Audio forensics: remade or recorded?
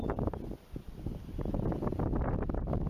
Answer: recorded